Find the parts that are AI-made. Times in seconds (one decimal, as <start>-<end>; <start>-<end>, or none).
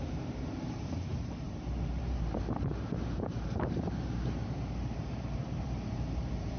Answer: 0.0-6.6